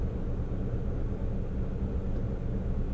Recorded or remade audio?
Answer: recorded